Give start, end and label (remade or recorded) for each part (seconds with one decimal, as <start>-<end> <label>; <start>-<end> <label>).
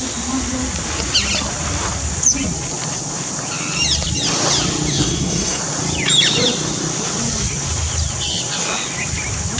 0.0-4.9 recorded; 4.9-5.6 remade; 5.6-9.6 recorded